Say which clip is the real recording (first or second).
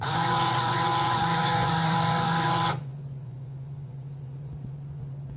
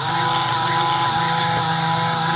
second